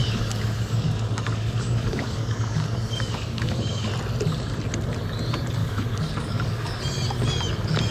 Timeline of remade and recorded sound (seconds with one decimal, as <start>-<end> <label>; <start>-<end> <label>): 0.0-3.9 remade; 3.9-5.6 recorded; 5.6-6.8 remade; 6.8-7.9 recorded